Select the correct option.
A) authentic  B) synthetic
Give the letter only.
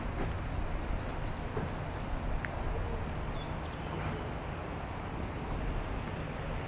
A